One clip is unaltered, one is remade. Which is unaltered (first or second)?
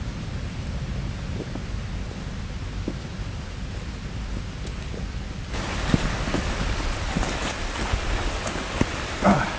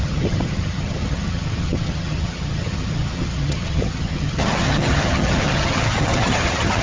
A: first